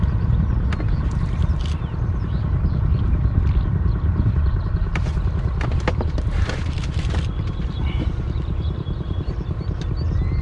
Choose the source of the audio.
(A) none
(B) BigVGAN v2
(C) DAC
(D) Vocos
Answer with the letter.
A